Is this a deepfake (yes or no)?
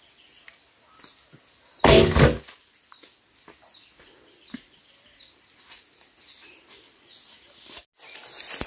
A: no